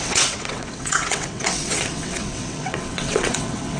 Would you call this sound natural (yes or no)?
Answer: no